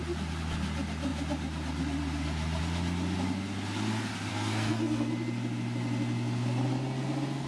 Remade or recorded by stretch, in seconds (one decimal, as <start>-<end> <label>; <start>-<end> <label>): 0.0-4.3 recorded; 4.3-5.1 remade; 5.1-7.5 recorded